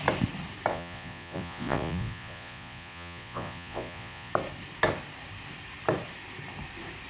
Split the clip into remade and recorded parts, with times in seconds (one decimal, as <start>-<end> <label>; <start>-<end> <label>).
0.0-0.7 recorded; 0.7-4.3 remade; 4.3-7.1 recorded